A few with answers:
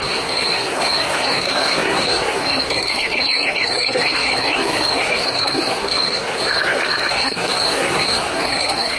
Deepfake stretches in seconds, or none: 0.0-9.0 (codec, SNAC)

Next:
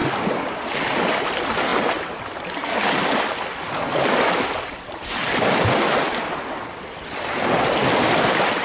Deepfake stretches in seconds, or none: none

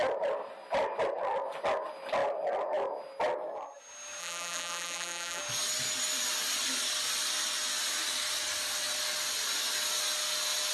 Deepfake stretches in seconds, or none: 4.2-5.4 (vocoder, BigVGAN v2)

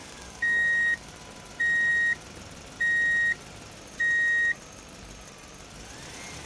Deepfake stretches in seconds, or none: 0.0-1.1 (codec, DAC)

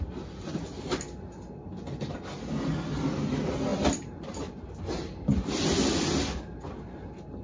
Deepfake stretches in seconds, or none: none

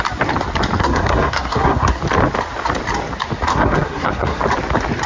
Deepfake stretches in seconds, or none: 0.8-2.0 (codec, SNAC); 3.5-4.4

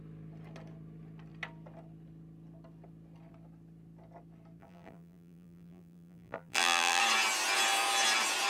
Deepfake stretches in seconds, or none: 4.6-7.0 (vocoder, BigVGAN v2)

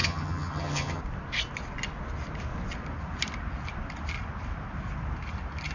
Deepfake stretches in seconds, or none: 0.0-1.0 (vocoder, HiFi-GAN)